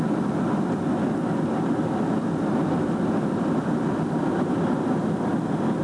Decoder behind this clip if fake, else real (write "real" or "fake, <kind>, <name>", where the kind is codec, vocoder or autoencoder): real